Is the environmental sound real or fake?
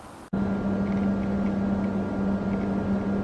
real